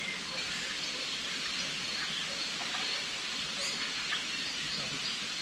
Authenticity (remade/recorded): recorded